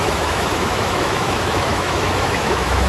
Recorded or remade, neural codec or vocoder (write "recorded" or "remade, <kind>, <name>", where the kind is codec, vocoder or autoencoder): remade, autoencoder, DAC-VAE